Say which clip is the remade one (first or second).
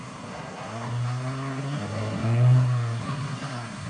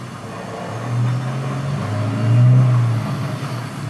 first